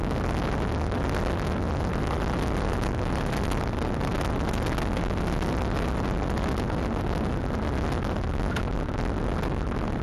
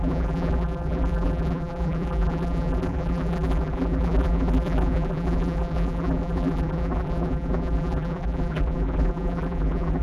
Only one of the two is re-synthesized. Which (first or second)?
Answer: second